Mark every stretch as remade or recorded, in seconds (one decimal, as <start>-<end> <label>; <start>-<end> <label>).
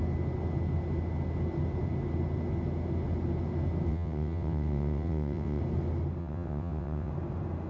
0.0-3.9 recorded; 3.9-5.6 remade; 5.6-6.2 recorded; 6.2-7.1 remade; 7.1-7.7 recorded